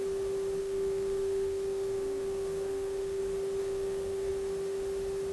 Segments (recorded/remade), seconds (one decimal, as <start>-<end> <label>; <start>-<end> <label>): 0.0-0.6 recorded; 0.6-3.2 remade; 3.2-3.6 recorded; 3.6-4.3 remade; 4.3-5.3 recorded